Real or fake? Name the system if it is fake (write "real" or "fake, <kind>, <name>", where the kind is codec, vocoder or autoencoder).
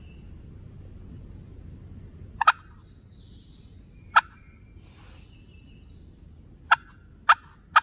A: real